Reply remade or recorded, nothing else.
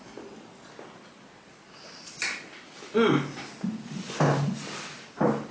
recorded